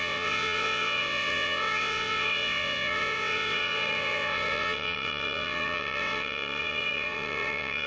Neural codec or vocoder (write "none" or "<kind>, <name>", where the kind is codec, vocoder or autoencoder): vocoder, WaveNeXt